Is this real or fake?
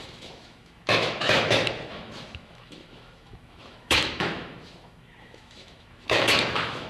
fake